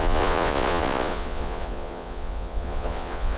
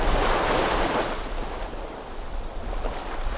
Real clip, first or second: second